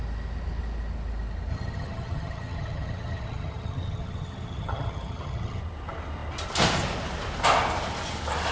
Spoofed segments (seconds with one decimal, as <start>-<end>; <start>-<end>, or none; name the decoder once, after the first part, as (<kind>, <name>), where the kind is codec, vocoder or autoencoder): 1.5-5.6 (vocoder, HiFi-GAN)